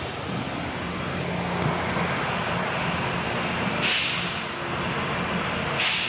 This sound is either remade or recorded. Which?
recorded